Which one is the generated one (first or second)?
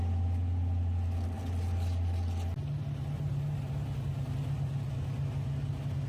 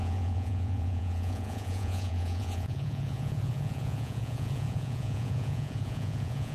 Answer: second